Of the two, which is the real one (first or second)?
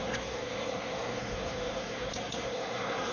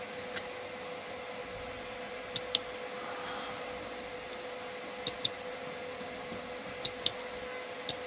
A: second